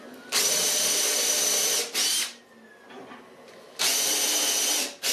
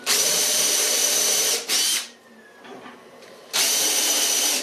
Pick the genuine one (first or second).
first